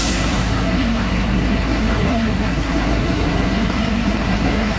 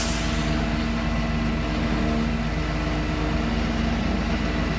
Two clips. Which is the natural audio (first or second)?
second